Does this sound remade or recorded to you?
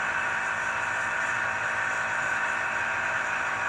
recorded